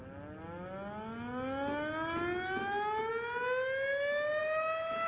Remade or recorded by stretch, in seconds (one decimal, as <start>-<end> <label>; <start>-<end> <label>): 0.0-5.1 recorded